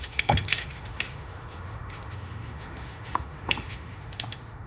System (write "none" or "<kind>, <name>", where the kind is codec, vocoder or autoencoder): autoencoder, DAC-VAE